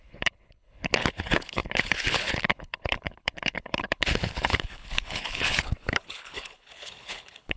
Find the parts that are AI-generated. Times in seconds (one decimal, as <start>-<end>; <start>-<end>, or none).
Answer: 0.0-7.6